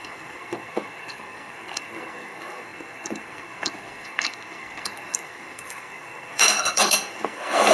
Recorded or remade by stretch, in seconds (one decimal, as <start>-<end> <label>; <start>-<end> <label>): 0.0-7.7 remade